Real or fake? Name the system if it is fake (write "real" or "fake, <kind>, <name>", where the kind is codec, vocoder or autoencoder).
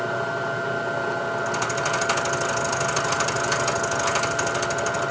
real